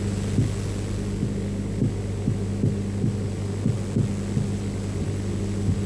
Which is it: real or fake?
real